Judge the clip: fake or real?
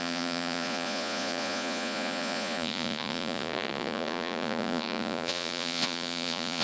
fake